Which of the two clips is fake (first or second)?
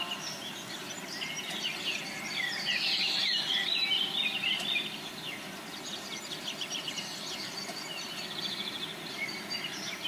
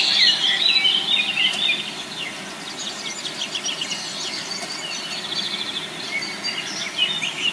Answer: first